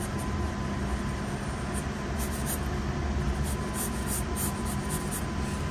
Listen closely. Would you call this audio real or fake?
real